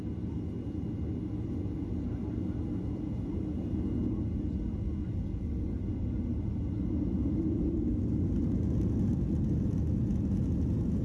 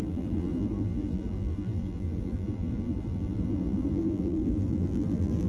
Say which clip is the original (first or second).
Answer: first